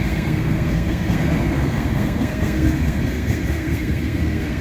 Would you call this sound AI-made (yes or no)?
yes